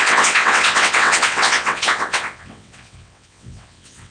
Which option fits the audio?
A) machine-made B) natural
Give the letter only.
A